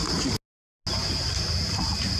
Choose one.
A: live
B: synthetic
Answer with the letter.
A